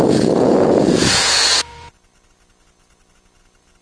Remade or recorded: remade